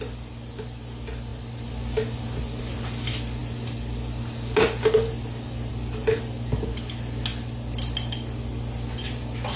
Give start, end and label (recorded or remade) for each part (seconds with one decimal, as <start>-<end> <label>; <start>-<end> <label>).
0.0-9.6 recorded